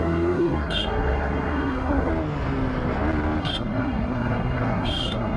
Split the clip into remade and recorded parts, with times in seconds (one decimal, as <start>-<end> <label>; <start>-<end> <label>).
0.0-2.1 remade; 2.1-3.4 recorded; 3.4-5.4 remade